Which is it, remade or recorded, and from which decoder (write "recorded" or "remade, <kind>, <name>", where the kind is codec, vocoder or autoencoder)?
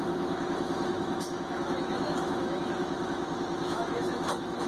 remade, autoencoder, DAC-VAE